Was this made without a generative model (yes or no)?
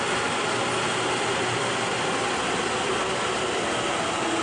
yes